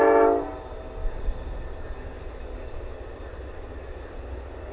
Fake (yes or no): no